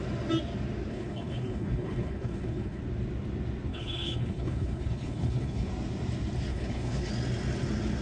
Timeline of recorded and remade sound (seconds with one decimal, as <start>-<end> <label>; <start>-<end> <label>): 0.0-0.9 recorded; 0.9-2.8 remade; 2.8-3.7 recorded; 3.7-5.7 remade; 5.7-6.5 recorded; 6.5-7.1 remade; 7.1-8.0 recorded